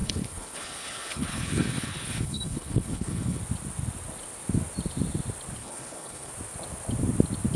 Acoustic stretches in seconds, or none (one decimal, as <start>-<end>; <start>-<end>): 3.4-5.6; 6.3-7.6